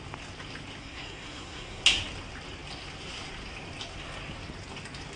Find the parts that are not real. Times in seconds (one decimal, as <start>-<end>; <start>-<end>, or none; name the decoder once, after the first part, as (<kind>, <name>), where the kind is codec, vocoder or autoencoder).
0.8-1.8 (codec, SNAC)